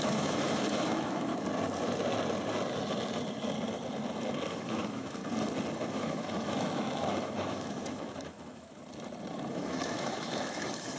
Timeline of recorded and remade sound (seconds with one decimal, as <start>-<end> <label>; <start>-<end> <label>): 0.0-1.3 remade; 1.3-4.5 recorded; 4.5-5.2 remade; 5.2-5.9 recorded; 5.9-8.8 remade; 8.8-9.5 recorded; 9.5-11.0 remade